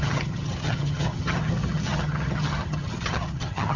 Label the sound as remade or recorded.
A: remade